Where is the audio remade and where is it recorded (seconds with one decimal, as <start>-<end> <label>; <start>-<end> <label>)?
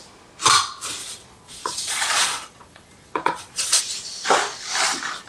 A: 0.0-1.0 recorded; 1.0-3.8 remade; 3.8-5.3 recorded